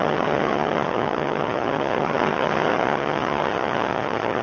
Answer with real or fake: fake